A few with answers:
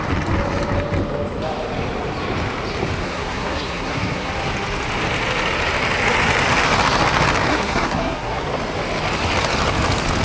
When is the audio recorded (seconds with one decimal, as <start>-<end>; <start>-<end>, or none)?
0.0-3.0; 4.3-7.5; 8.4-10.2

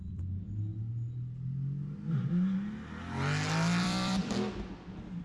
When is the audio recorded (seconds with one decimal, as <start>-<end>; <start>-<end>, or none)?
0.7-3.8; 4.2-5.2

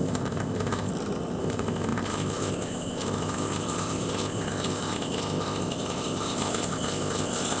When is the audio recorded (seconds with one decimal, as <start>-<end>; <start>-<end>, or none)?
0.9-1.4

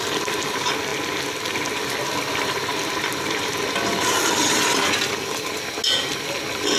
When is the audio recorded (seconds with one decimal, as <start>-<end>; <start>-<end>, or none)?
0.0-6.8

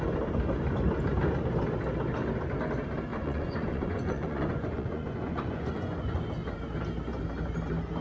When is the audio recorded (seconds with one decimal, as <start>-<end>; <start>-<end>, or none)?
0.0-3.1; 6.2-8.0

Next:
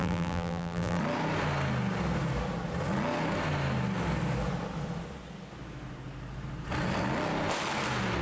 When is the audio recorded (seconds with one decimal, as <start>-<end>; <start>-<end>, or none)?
1.0-8.2